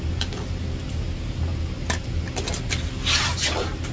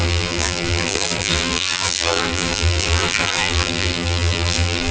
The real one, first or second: first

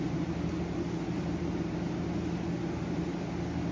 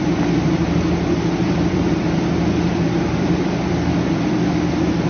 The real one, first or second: first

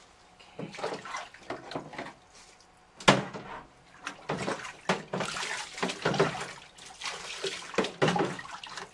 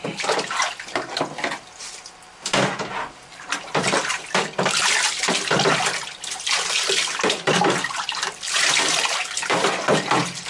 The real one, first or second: first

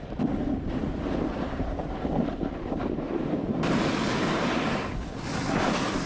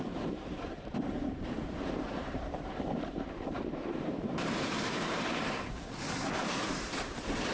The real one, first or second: first